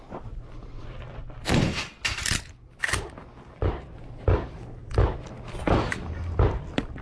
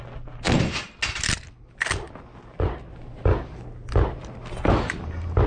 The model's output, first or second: first